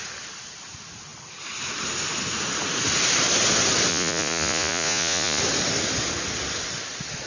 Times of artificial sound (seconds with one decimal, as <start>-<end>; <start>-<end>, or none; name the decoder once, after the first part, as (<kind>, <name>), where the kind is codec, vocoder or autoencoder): 3.9-5.4 (vocoder, Vocos)